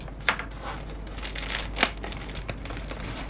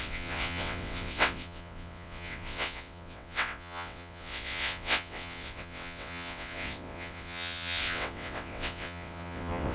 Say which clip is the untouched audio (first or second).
first